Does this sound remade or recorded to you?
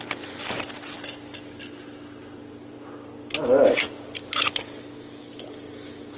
recorded